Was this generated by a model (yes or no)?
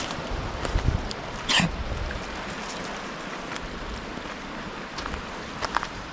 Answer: yes